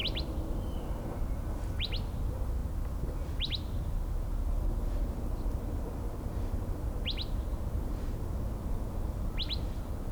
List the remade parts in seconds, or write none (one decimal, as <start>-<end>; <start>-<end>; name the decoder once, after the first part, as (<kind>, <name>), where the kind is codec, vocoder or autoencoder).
0.0-0.7 (vocoder, BigVGAN v2)